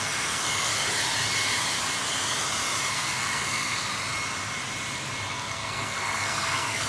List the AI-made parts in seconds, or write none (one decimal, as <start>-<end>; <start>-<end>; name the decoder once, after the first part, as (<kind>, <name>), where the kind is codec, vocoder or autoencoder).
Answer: 0.0-0.7 (codec, SNAC); 2.9-3.9; 5.3-6.9